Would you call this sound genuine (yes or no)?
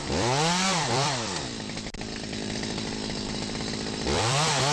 no